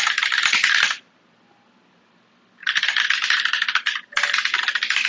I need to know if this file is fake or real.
real